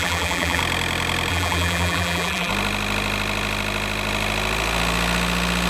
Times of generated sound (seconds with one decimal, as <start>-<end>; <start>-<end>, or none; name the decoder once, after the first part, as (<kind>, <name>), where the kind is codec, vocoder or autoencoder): 0.0-0.6 (vocoder, BigVGAN v2); 1.3-2.5